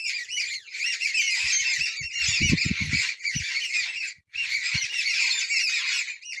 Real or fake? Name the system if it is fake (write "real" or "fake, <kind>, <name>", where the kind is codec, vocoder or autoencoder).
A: real